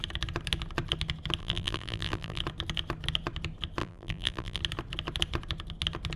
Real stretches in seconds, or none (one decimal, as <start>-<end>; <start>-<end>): 0.0-1.4; 2.4-3.8; 4.6-6.2